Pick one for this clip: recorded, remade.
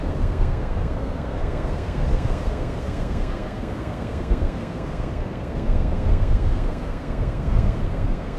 remade